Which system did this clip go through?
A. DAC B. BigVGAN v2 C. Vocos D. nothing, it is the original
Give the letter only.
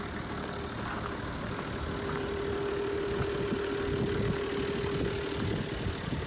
D